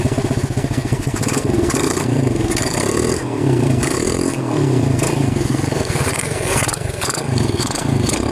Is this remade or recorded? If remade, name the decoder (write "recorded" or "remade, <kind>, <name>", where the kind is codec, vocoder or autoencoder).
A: remade, codec, SNAC